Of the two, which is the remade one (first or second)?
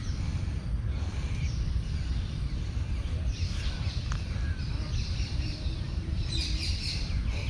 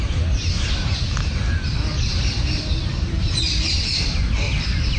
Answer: first